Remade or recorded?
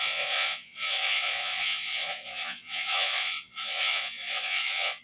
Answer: remade